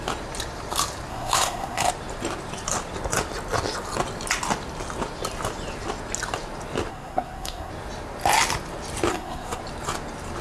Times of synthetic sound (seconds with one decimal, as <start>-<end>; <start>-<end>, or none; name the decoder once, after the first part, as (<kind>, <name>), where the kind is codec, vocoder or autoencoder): 1.1-1.9 (codec, SNAC); 6.9-7.7; 9.1-9.6

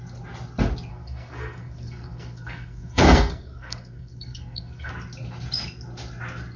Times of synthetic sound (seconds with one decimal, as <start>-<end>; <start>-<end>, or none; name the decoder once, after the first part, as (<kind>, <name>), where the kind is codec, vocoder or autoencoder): 0.9-4.9 (codec, SNAC)